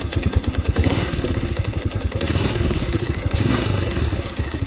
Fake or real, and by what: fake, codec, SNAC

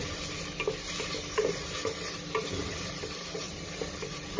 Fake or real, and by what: real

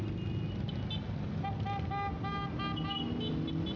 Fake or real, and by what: real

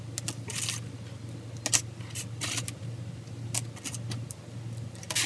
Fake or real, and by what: real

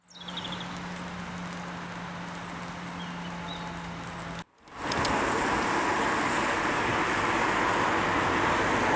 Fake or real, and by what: real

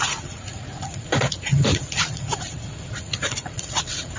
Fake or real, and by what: fake, vocoder, Vocos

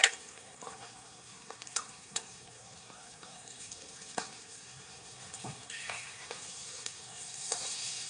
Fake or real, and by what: fake, codec, SNAC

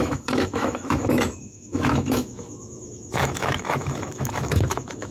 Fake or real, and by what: fake, autoencoder, DAC-VAE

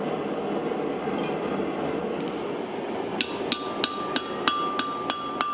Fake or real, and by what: real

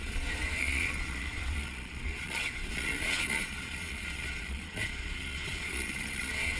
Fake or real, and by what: fake, vocoder, Vocos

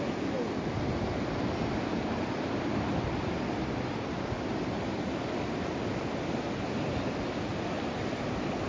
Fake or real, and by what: real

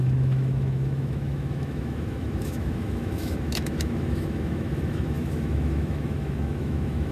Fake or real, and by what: fake, autoencoder, DAC-VAE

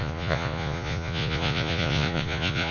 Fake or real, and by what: fake, vocoder, Vocos